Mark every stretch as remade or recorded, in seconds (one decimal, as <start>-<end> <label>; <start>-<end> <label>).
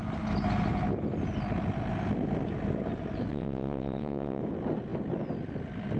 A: 0.0-3.3 recorded; 3.3-4.4 remade; 4.4-6.0 recorded